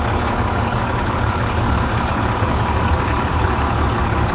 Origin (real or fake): fake